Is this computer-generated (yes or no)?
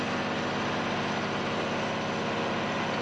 no